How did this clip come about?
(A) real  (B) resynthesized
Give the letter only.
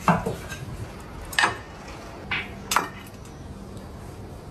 A